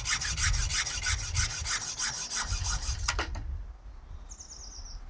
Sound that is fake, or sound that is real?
real